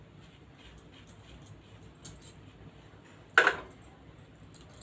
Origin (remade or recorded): recorded